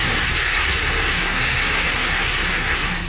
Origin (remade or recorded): remade